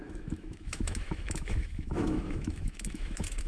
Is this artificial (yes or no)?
yes